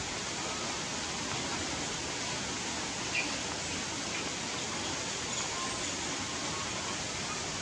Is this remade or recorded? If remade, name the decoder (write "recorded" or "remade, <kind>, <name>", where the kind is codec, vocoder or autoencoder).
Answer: recorded